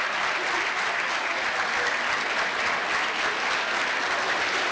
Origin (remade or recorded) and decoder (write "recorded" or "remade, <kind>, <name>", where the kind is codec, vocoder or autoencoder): recorded